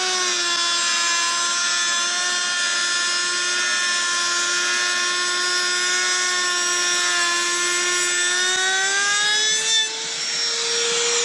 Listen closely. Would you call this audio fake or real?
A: real